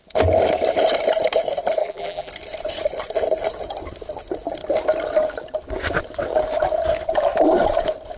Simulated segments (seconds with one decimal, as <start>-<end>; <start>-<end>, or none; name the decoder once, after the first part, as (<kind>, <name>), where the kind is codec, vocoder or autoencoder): 1.8-2.3 (vocoder, BigVGAN v2)